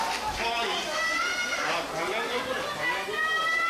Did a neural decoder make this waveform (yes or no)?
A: no